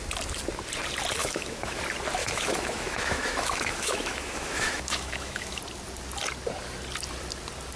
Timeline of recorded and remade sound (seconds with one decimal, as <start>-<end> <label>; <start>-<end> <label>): 0.0-1.2 recorded; 1.2-1.8 remade; 1.8-2.2 recorded; 2.2-5.6 remade; 5.6-7.8 recorded